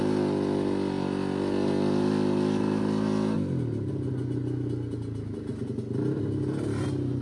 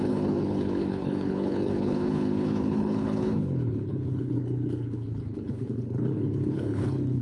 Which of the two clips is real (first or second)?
first